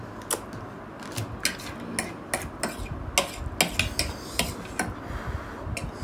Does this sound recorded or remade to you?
recorded